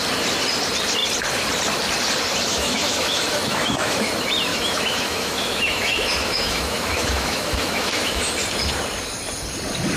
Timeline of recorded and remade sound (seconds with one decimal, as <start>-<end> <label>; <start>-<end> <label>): 0.0-2.5 recorded; 2.5-4.1 remade; 4.1-4.5 recorded; 4.5-8.3 remade; 8.3-10.0 recorded